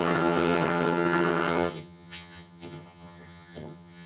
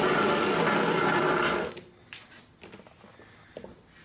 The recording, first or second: second